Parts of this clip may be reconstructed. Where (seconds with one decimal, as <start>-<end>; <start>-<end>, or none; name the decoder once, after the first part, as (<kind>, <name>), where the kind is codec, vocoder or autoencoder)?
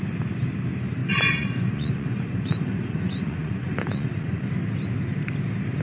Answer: 1.0-4.5 (vocoder, Vocos)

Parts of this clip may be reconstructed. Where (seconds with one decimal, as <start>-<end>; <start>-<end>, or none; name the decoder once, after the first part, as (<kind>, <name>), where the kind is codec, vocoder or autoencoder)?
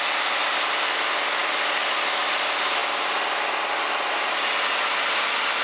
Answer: none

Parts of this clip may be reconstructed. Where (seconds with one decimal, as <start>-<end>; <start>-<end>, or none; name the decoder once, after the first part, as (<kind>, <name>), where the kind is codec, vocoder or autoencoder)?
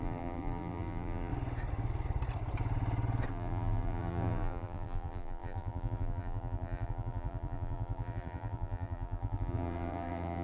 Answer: 0.0-1.3 (vocoder, BigVGAN v2); 3.3-10.4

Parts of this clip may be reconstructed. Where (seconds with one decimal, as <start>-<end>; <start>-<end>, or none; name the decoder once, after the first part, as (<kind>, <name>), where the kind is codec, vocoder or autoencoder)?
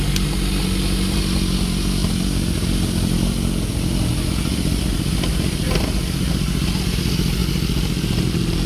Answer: none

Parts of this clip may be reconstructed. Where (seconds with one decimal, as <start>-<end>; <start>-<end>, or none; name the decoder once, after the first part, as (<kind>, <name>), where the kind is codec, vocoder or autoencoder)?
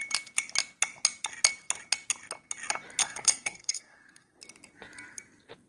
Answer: 3.0-4.4 (codec, SNAC)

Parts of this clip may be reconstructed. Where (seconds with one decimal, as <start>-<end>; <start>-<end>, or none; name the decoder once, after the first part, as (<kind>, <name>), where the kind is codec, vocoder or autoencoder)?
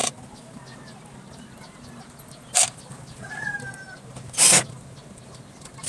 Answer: none